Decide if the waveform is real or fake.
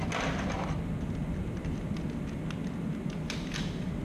real